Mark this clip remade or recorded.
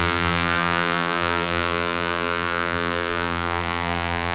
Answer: remade